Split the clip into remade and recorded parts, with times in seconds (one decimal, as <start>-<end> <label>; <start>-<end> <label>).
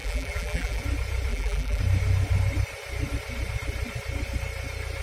0.0-0.8 remade; 0.8-1.3 recorded; 1.3-1.8 remade; 1.8-5.0 recorded